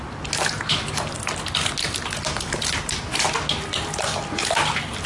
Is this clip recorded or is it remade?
recorded